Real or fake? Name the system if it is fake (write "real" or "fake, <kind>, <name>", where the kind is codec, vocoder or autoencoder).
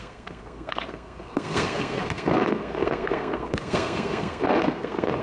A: fake, codec, SNAC